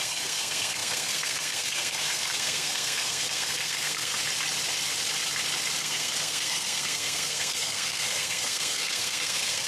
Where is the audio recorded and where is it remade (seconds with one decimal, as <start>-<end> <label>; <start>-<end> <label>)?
0.0-4.1 remade; 4.1-5.8 recorded; 5.8-9.7 remade